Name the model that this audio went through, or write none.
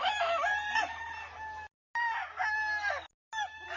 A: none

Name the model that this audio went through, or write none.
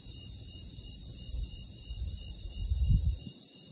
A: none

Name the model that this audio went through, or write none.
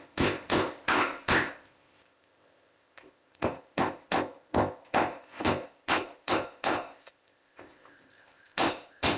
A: codec, ZipCodec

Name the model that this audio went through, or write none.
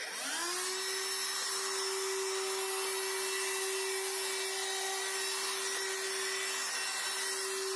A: none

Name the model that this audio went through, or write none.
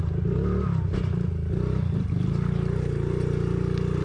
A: none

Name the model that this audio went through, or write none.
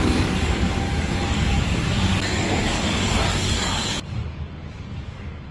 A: codec, DAC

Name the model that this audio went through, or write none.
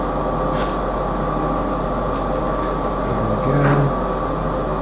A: none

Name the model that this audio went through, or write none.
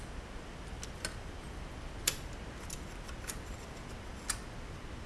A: none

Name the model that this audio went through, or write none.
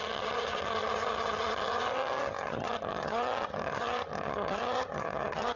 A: vocoder, HiFi-GAN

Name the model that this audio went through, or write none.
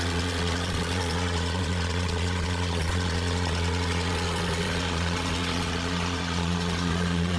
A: vocoder, Vocos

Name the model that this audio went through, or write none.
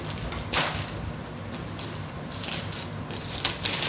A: none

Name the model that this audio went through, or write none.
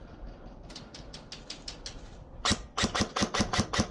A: none